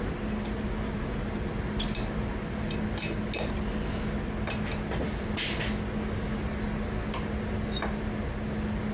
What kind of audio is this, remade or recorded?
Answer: recorded